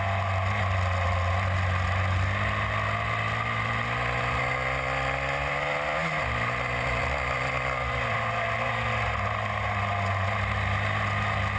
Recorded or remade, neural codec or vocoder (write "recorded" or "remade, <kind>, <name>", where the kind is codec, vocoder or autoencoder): recorded